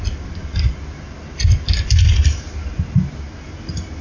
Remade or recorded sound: recorded